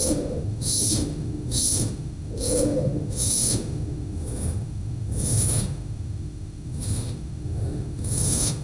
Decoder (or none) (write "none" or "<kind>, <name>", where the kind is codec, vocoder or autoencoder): autoencoder, DAC-VAE